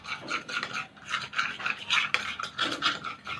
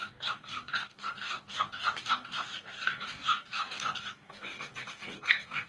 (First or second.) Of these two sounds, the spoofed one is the second